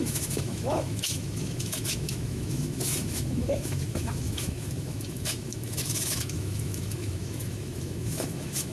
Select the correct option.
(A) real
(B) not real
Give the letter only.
B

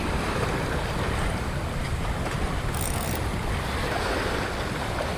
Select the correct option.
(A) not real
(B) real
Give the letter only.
B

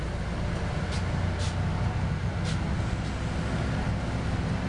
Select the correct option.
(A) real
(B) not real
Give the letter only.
A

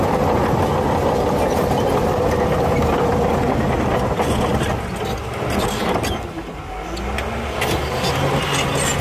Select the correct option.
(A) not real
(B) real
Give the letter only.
B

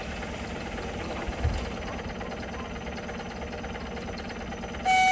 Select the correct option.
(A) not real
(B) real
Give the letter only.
B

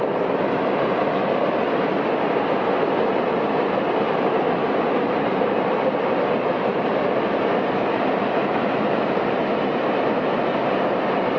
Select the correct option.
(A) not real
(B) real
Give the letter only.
B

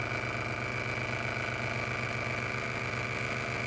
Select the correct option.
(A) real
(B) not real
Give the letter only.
A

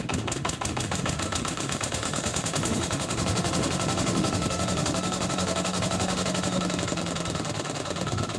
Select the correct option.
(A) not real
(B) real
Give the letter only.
A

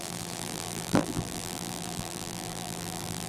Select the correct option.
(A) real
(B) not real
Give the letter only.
B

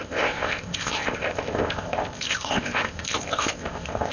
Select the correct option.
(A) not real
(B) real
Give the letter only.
A